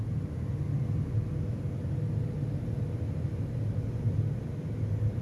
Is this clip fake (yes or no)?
no